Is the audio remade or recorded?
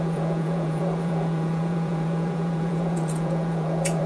remade